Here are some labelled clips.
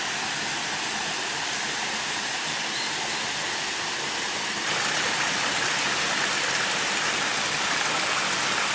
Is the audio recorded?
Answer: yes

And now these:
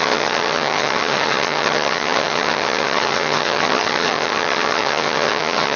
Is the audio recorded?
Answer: no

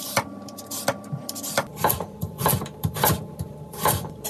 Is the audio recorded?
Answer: no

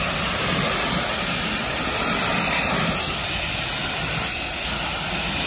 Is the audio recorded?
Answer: yes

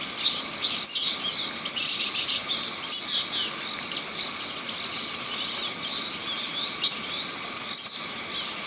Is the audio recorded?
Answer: yes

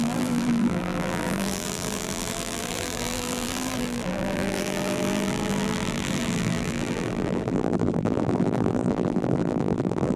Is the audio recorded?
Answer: no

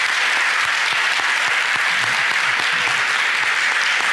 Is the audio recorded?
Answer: yes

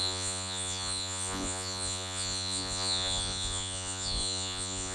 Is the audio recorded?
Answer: no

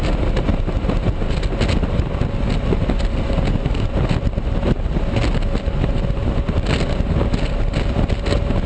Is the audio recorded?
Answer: yes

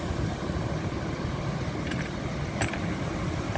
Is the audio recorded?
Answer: yes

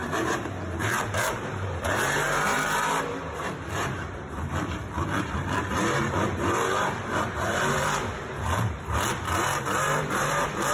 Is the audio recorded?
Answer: no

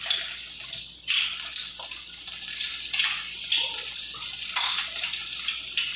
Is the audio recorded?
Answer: yes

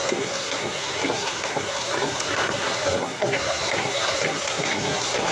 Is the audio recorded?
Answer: no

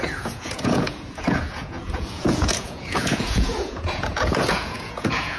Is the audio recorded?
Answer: no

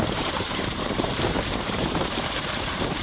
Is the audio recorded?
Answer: no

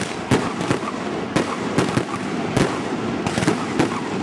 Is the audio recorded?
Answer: yes